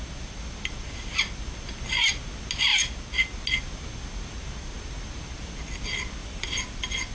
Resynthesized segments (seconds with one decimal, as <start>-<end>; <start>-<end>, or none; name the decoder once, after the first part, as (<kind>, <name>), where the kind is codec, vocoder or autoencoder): 6.2-7.1 (vocoder, BigVGAN v2)